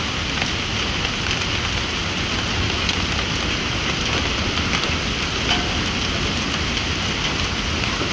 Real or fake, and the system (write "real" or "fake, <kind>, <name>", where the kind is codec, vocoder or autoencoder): real